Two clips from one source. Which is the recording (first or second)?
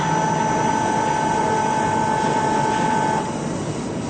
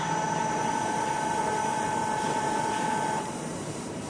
first